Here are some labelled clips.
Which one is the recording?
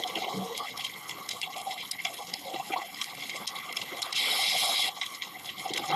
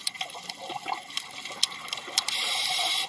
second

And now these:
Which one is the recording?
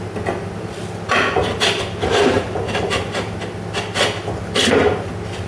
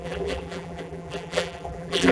first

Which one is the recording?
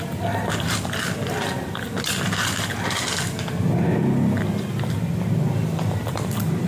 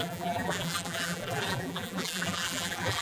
first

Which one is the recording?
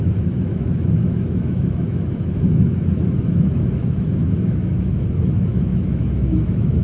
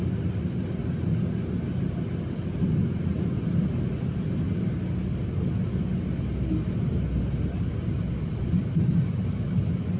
second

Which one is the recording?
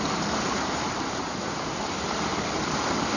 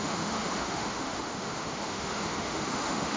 first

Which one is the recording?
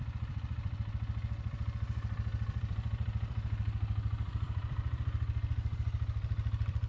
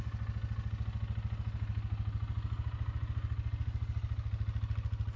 second